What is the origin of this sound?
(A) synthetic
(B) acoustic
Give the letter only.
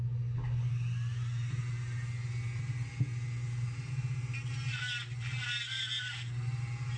B